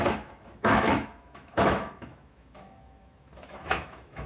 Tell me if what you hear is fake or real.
fake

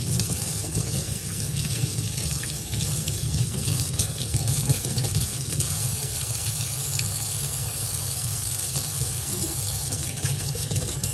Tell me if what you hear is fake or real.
fake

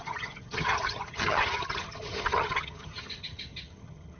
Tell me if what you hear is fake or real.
fake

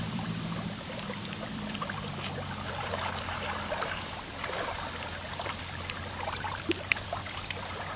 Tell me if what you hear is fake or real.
fake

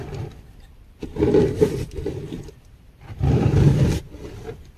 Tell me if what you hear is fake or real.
fake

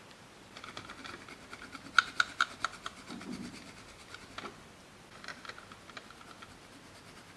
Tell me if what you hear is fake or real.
real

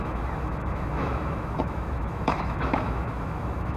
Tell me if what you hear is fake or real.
fake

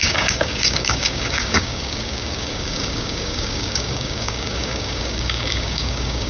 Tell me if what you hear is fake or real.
fake